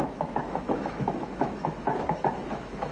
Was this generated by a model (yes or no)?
yes